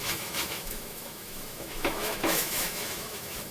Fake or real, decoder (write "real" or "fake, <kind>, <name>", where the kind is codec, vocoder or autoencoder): fake, autoencoder, DAC-VAE